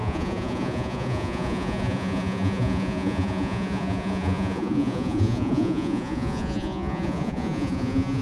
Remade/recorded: remade